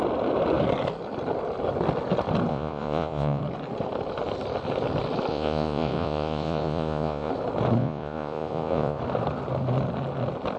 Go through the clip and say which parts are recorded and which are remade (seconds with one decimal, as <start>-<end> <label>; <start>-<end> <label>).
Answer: 0.0-2.5 recorded; 2.5-3.4 remade; 3.4-5.3 recorded; 5.3-7.3 remade; 7.3-7.8 recorded; 7.8-9.0 remade; 9.0-10.6 recorded